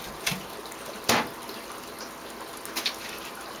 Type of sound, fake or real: real